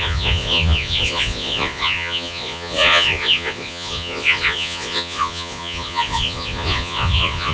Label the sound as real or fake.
fake